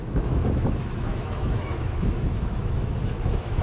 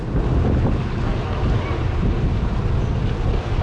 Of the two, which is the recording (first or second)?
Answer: second